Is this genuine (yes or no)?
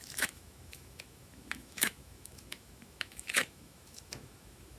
no